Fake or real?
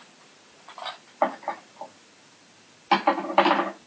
real